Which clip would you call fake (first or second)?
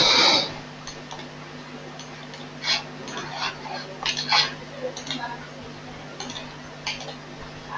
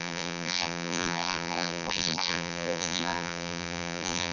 second